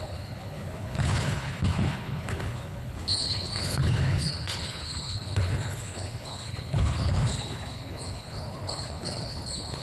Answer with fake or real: fake